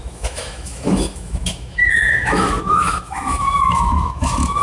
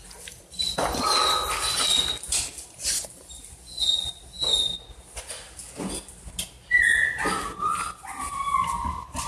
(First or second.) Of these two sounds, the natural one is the second